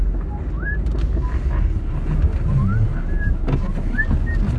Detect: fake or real real